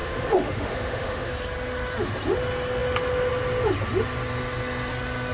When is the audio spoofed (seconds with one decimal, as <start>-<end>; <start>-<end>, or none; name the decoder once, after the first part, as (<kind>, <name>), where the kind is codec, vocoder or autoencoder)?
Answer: 0.0-1.3 (autoencoder, DAC-VAE)